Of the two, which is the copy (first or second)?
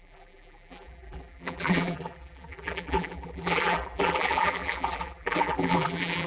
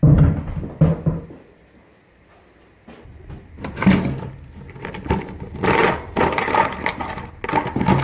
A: first